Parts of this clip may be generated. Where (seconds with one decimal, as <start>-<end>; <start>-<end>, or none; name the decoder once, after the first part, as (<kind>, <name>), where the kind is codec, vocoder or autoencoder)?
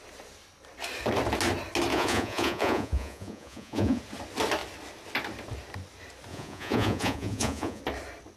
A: 1.9-4.0 (vocoder, Vocos); 6.3-7.8